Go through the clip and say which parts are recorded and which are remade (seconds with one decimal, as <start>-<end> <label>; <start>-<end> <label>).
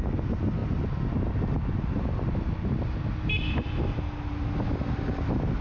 0.0-5.6 recorded